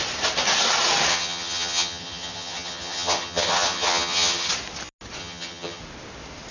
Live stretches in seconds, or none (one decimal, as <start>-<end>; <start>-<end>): 0.0-1.1; 4.5-5.2; 5.8-6.5